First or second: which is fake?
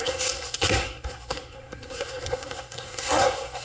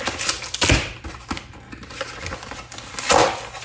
first